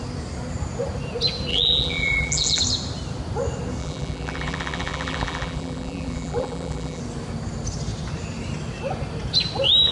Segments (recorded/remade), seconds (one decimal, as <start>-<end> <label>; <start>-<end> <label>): 0.0-1.5 recorded; 1.5-2.6 remade; 2.6-3.8 recorded; 3.8-7.0 remade; 7.0-9.9 recorded